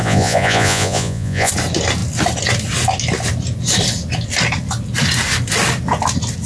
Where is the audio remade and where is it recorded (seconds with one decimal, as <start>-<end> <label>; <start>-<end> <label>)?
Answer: 0.0-1.5 remade; 1.5-6.5 recorded